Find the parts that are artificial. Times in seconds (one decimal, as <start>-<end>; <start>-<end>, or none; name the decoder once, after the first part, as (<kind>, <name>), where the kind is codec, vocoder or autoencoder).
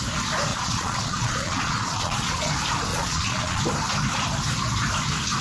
0.5-2.5 (vocoder, Vocos); 2.9-3.6